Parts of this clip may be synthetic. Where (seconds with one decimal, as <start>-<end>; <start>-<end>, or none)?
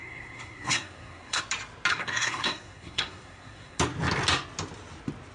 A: 0.0-1.4; 1.9-3.8